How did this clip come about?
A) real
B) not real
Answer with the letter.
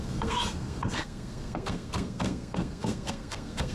B